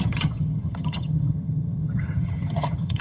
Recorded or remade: remade